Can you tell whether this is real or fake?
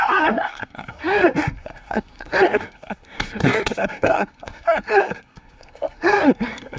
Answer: fake